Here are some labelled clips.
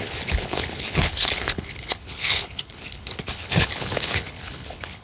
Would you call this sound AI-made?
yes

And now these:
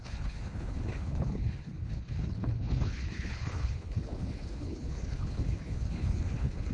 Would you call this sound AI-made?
yes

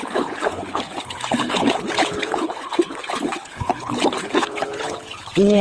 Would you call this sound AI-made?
yes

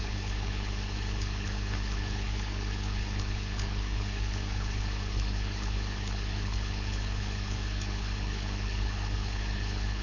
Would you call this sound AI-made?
yes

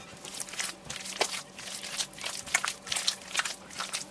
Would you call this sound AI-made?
no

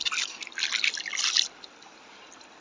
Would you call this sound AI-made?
no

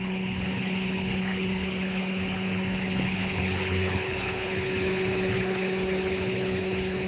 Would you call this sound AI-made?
yes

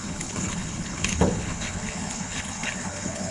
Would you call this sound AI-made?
yes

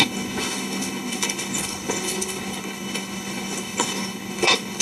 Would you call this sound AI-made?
yes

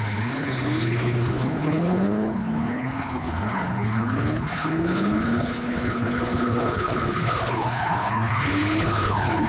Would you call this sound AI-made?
yes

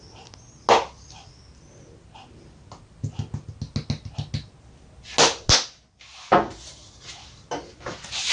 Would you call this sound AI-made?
no